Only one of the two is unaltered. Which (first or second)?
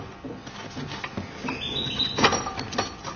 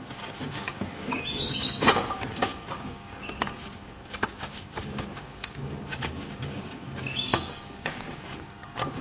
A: first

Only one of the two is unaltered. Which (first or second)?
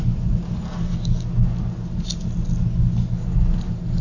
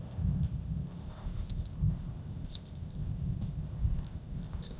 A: first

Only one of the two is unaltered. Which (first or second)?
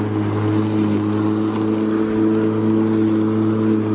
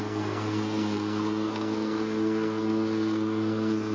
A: first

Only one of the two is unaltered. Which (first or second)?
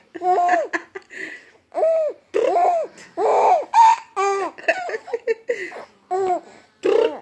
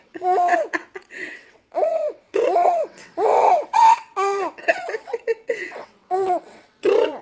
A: first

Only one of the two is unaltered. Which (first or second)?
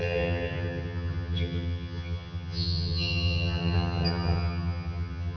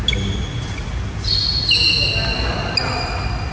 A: second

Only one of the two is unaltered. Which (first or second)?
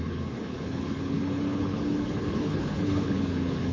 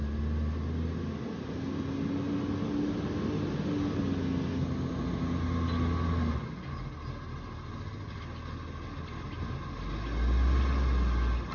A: second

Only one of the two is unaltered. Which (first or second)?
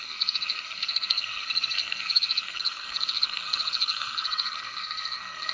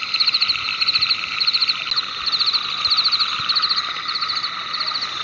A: second